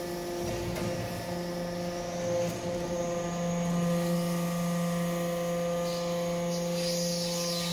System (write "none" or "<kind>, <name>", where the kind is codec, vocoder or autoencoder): none